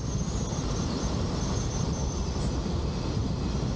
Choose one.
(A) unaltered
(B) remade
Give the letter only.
A